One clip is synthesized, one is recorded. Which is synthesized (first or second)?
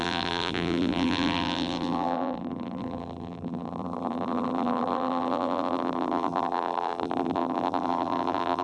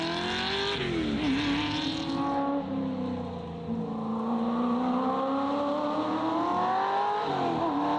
first